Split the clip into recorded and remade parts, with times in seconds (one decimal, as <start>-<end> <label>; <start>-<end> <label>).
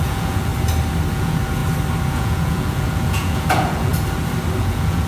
0.0-0.5 remade; 0.5-1.1 recorded; 1.1-1.6 remade; 1.6-2.1 recorded; 2.1-3.9 remade; 3.9-4.6 recorded; 4.6-5.1 remade